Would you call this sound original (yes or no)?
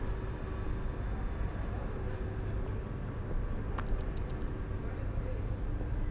yes